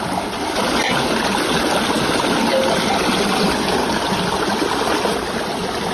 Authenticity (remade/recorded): recorded